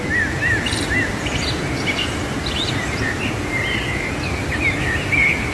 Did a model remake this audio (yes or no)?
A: no